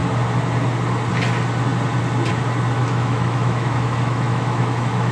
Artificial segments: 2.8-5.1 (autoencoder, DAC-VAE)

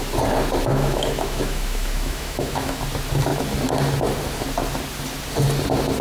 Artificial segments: 0.7-2.8 (autoencoder, DAC-VAE)

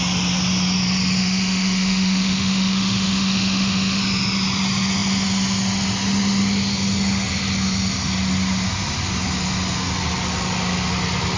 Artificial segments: 1.2-4.0 (autoencoder, DAC-VAE)